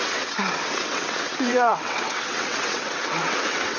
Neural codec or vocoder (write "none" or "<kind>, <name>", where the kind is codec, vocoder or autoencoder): vocoder, WaveNeXt